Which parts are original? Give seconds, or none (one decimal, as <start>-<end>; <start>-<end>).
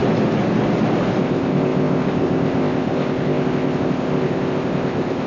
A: 0.0-1.2